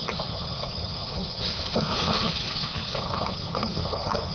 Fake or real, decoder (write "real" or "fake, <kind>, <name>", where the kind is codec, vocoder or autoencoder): fake, codec, HILCodec